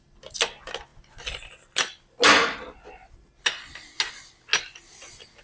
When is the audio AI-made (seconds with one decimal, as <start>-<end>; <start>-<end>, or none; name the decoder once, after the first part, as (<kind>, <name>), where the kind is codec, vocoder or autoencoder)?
none

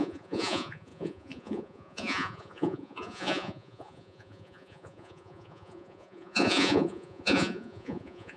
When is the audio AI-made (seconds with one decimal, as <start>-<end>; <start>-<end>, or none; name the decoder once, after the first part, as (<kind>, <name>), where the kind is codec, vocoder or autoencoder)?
0.0-8.4 (vocoder, Vocos)

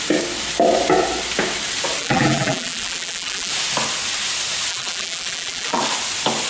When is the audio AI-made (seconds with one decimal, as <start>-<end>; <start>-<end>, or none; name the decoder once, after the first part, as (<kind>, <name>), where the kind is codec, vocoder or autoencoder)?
2.0-3.5 (vocoder, BigVGAN v2); 4.7-5.8

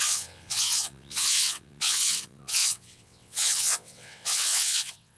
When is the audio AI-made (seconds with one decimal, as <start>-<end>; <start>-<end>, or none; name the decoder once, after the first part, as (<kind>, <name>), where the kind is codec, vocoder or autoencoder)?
0.0-5.2 (vocoder, WaveNeXt)

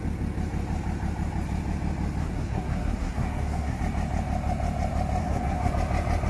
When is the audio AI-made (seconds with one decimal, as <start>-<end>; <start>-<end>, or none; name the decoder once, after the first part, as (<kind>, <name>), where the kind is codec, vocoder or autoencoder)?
2.2-3.8 (codec, SNAC); 5.2-5.7

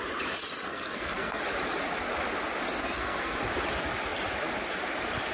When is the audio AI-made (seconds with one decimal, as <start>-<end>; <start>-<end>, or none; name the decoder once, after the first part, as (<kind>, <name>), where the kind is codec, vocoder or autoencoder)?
0.7-1.4 (codec, SNAC); 2.8-3.4